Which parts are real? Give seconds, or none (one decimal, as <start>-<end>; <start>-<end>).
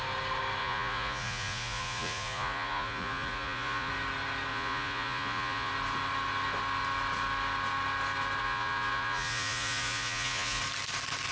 0.0-0.6; 3.9-4.5; 5.7-8.4; 10.6-11.3